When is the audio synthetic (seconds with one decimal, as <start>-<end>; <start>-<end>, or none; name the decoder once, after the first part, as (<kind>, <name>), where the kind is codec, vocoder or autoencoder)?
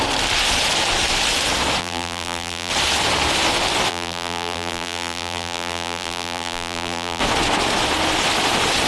1.8-2.7 (vocoder, BigVGAN v2); 3.9-7.2